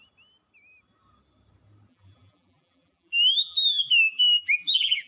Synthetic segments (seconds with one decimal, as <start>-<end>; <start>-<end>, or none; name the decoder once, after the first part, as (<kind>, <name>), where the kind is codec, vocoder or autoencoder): 1.9-5.1 (vocoder, BigVGAN v2)